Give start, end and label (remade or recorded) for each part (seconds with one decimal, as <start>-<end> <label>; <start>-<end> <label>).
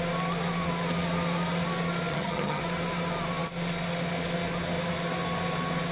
0.0-2.1 recorded; 2.1-2.6 remade; 2.6-5.9 recorded